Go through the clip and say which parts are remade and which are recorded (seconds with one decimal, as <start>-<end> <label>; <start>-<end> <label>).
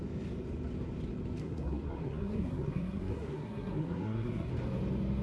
0.0-1.4 recorded; 1.4-4.5 remade; 4.5-5.2 recorded